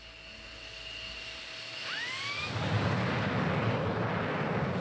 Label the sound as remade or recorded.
recorded